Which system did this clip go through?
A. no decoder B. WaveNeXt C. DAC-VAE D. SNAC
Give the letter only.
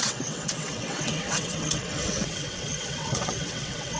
B